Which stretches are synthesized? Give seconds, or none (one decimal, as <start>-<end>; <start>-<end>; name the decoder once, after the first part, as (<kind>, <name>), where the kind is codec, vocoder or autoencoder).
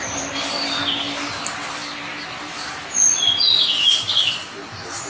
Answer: none